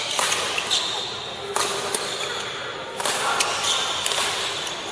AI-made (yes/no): no